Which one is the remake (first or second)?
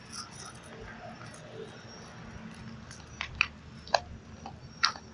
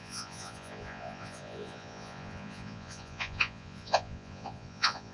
second